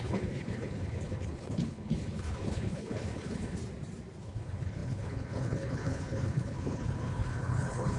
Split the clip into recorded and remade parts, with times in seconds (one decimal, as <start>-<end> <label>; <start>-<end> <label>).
0.0-3.6 remade; 3.6-4.2 recorded; 4.2-8.0 remade